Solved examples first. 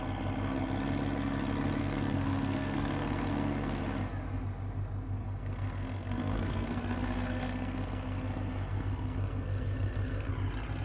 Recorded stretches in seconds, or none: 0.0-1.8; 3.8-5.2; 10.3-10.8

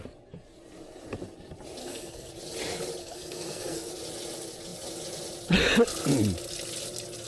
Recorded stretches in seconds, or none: 0.0-1.8; 2.3-3.0; 3.9-7.3

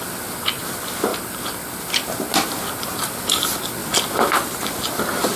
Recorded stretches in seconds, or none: 0.0-5.4